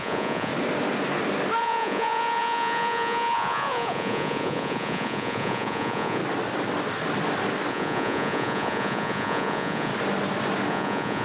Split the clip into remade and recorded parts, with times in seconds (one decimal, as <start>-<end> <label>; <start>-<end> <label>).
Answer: 0.0-0.5 remade; 0.5-1.6 recorded; 1.6-6.2 remade; 6.2-7.7 recorded; 7.7-9.9 remade; 9.9-10.7 recorded; 10.7-11.2 remade